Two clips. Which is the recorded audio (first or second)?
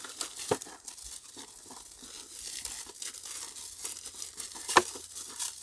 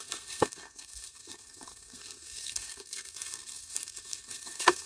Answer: first